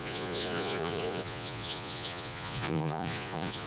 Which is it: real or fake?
fake